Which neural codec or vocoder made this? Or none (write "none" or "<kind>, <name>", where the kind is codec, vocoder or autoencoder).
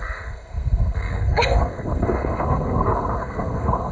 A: codec, SNAC